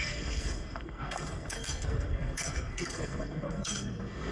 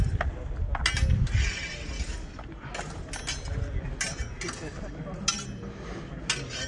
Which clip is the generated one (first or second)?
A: first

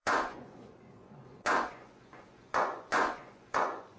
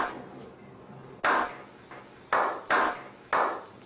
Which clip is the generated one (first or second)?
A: first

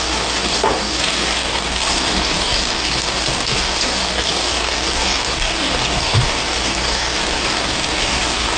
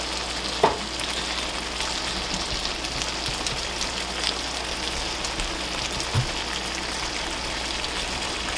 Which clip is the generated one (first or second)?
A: first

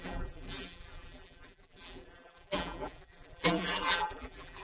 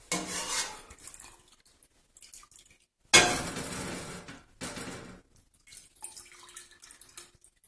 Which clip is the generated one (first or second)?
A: first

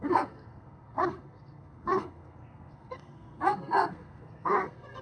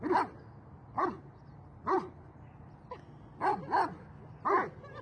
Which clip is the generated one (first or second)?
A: first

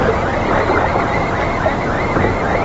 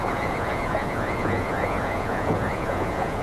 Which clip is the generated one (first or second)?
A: second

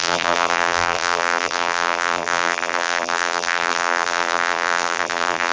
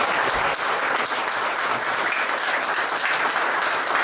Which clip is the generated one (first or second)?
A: first